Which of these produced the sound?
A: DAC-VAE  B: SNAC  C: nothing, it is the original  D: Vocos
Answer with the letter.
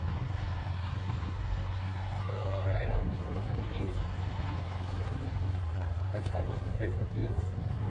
B